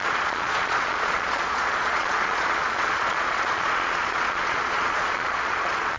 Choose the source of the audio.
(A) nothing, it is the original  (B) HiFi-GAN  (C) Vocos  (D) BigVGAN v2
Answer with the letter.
C